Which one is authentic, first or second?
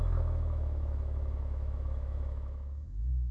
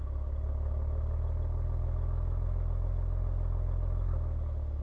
second